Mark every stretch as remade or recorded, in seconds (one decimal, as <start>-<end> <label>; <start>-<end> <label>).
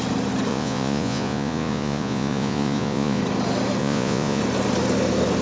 0.0-0.5 recorded; 0.5-3.2 remade; 3.2-3.8 recorded; 3.8-4.4 remade; 4.4-5.4 recorded